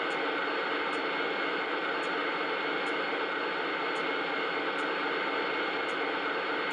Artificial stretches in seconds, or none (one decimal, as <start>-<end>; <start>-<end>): 0.0-6.7